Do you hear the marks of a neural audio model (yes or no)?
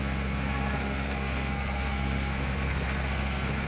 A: yes